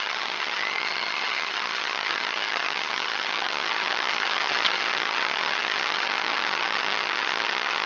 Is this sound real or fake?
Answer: fake